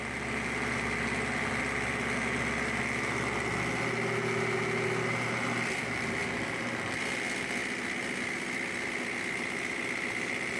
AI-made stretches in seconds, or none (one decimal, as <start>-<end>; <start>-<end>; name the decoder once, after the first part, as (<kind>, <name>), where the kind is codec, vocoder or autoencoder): none

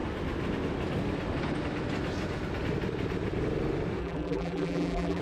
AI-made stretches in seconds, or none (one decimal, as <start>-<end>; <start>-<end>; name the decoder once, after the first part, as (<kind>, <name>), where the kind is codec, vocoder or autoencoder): 4.0-5.2 (vocoder, BigVGAN v2)

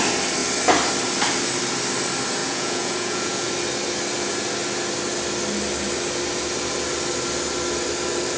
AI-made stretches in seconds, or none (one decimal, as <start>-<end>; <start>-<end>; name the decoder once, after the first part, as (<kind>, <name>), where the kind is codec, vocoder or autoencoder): 2.4-3.5 (vocoder, Vocos)

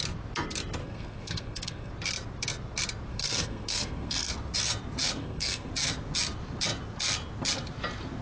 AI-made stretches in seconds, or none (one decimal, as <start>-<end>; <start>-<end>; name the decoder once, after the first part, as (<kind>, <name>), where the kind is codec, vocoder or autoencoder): 0.8-1.9 (codec, SNAC); 3.1-4.3; 5.2-5.7